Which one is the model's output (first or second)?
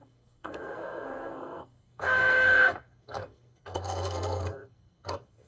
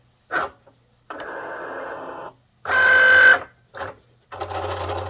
first